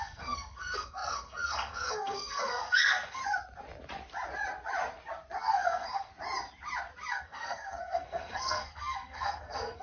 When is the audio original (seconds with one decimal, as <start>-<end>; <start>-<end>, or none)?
3.2-5.4; 6.1-7.1